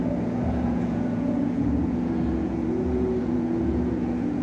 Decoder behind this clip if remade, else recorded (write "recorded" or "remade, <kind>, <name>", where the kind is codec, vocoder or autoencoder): remade, vocoder, Vocos